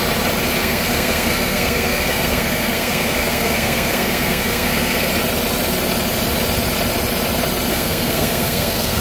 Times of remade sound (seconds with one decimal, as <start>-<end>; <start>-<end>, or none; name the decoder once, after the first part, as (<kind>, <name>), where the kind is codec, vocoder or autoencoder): 0.6-5.1 (codec, SNAC); 7.7-9.0